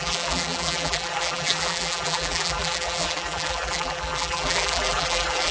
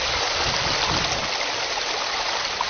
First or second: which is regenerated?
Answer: first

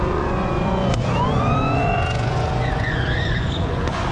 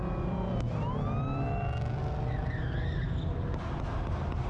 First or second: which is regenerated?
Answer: first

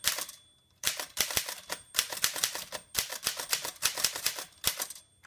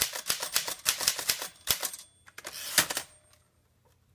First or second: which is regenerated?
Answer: first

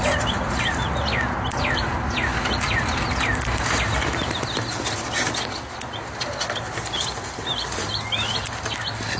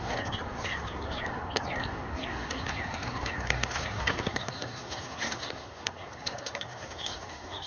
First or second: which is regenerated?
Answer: second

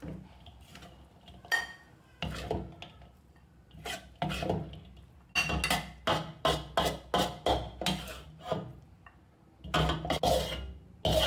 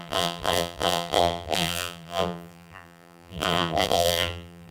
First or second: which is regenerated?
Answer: second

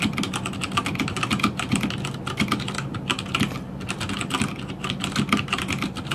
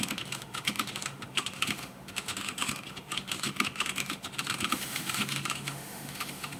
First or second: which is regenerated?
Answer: second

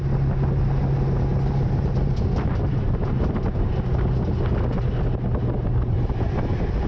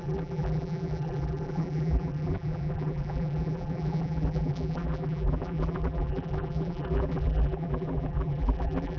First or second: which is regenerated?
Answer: second